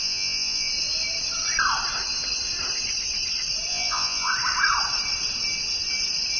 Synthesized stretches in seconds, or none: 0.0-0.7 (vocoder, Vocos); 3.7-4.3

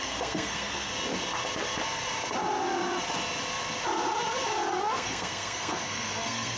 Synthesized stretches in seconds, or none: 0.0-0.9 (codec, SNAC); 4.7-6.6